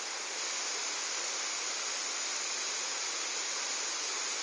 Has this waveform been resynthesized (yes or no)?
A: no